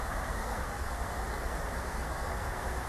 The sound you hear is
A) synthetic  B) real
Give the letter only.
A